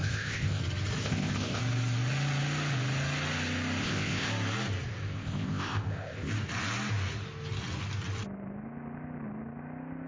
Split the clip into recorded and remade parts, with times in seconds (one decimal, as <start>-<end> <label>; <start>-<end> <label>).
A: 0.0-0.6 remade; 0.6-1.0 recorded; 1.0-1.6 remade; 1.6-3.8 recorded; 3.8-4.3 remade; 4.3-5.0 recorded; 5.0-6.3 remade; 6.3-10.1 recorded